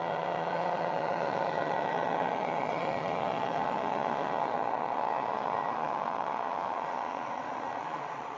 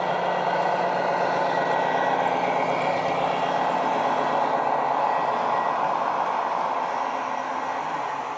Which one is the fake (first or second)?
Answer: first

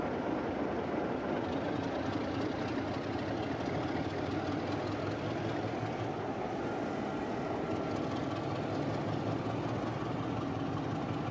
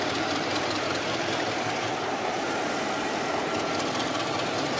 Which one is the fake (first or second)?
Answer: second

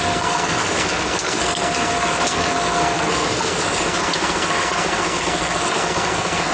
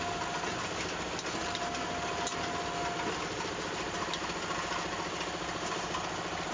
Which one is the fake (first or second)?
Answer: first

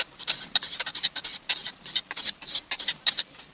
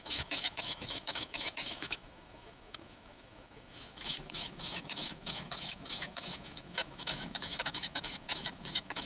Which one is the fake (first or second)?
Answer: second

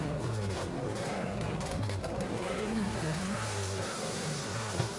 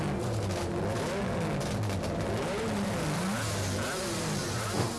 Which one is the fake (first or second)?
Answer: first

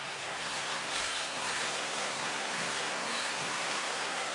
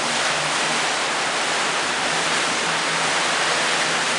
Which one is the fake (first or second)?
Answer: first